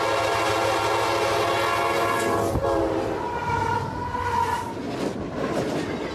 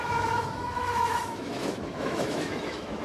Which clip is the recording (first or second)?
first